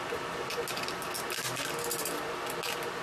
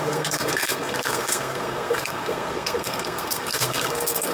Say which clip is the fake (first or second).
second